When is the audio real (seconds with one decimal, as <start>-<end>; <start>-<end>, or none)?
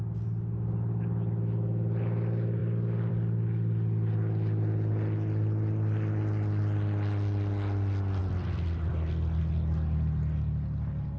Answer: 0.0-11.2